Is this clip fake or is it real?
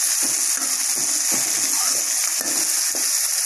real